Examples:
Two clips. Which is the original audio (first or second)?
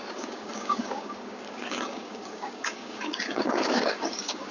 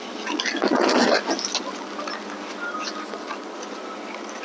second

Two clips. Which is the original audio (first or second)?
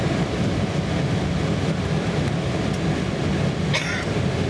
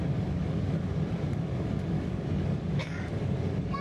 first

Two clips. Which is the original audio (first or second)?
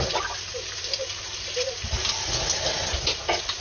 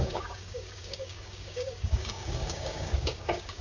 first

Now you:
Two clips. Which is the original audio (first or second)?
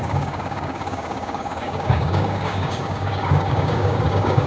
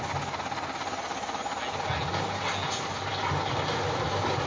second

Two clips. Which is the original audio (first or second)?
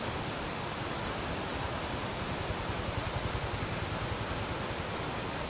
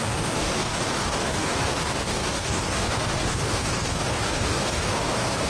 first